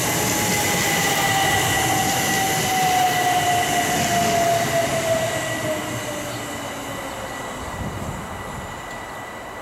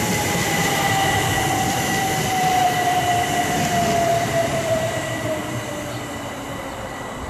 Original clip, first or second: first